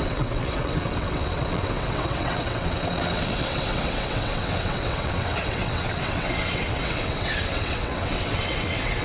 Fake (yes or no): yes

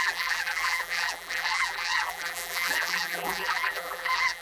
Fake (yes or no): yes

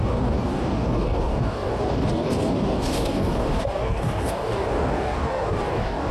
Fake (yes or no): yes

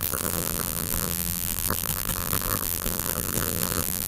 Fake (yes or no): yes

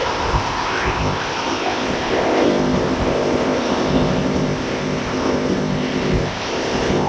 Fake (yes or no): yes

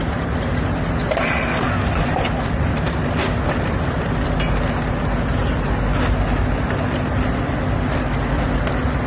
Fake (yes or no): no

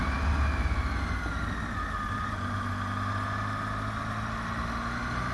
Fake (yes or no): no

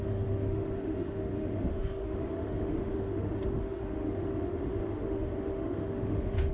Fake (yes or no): yes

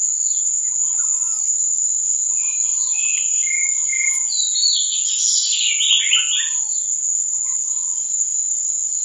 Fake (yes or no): no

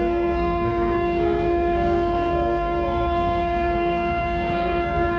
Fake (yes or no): yes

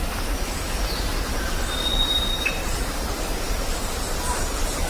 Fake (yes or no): no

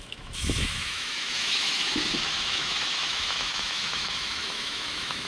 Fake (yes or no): yes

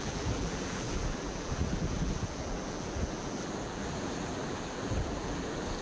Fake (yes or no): yes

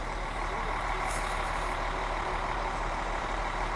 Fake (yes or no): yes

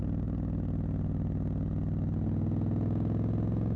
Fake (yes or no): no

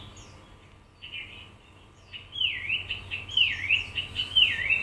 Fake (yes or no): no